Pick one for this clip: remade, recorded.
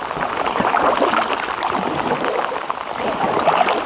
recorded